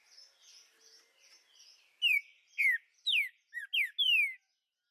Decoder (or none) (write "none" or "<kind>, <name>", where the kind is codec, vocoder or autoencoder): none